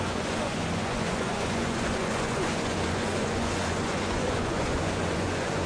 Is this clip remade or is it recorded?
remade